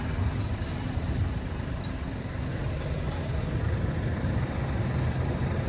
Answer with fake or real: real